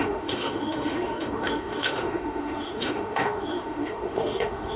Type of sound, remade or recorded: remade